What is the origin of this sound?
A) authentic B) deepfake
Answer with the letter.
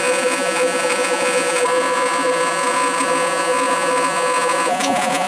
B